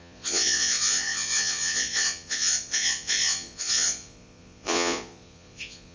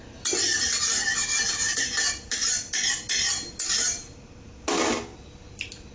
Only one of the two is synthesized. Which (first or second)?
first